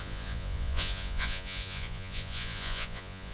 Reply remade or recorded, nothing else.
remade